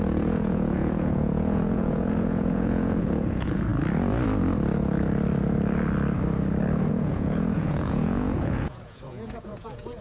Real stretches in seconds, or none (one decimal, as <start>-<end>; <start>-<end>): 3.7-6.9